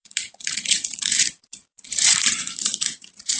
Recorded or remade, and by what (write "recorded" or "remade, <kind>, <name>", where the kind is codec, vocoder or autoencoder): remade, vocoder, Vocos